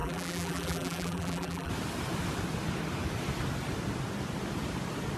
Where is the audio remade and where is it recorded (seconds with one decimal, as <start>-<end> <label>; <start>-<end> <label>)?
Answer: 0.0-1.7 remade; 1.7-5.2 recorded